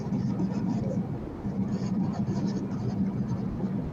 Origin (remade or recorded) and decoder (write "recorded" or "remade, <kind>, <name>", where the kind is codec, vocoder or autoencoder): remade, vocoder, BigVGAN v2